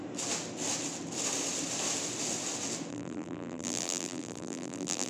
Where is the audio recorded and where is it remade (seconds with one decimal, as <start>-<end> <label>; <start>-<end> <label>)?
0.0-2.9 recorded; 2.9-5.1 remade